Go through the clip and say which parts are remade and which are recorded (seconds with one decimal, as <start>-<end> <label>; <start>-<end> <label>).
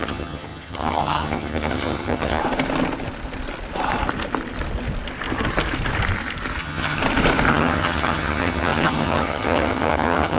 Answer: 0.0-2.4 remade; 2.4-6.6 recorded; 6.6-7.0 remade; 7.0-7.5 recorded; 7.5-10.4 remade